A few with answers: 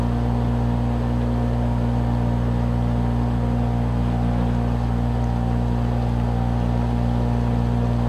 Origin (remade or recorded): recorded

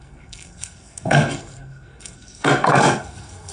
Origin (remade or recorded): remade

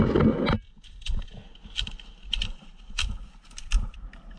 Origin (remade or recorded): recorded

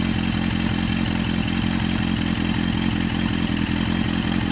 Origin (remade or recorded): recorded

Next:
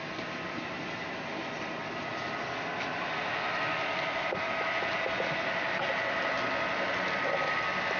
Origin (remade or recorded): recorded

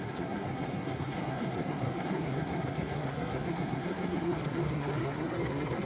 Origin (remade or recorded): remade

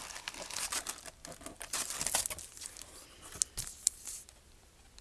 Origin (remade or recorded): recorded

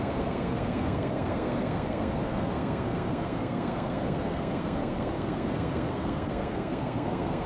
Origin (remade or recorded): remade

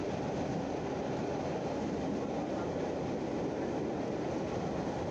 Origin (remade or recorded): recorded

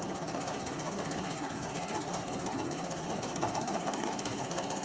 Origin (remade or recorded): remade